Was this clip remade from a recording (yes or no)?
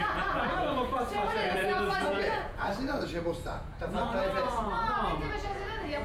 yes